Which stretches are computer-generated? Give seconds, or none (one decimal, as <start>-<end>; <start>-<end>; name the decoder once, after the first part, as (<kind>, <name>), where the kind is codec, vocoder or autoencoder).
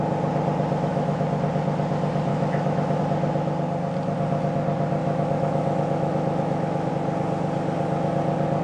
0.9-1.4 (autoencoder, DAC-VAE); 2.3-3.0; 5.0-6.9